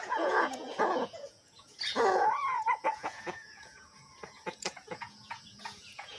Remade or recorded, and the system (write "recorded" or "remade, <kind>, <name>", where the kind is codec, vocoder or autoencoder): remade, vocoder, Vocos